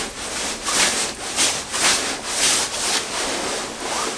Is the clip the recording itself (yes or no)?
yes